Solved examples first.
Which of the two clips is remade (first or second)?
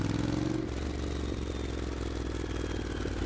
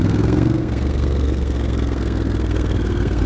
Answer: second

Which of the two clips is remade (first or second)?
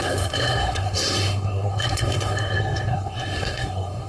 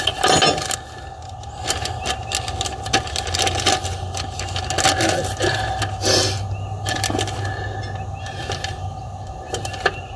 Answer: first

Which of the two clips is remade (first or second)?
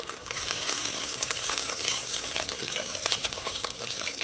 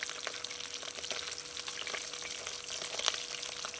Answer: first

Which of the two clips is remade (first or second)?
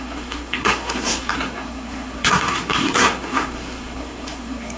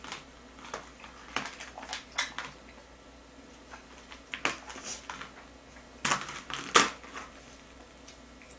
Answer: first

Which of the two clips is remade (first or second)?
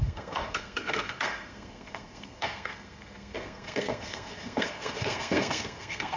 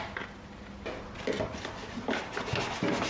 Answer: first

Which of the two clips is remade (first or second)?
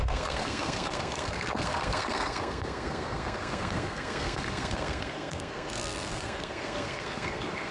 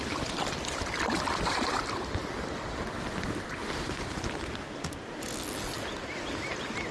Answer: first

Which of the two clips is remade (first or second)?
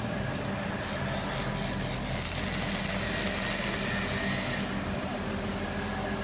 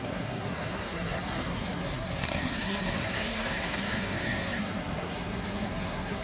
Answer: second